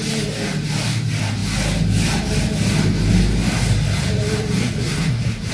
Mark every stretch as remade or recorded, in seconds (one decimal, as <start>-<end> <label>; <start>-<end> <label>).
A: 0.0-4.6 recorded; 4.6-5.5 remade